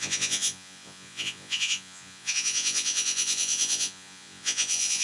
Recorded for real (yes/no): no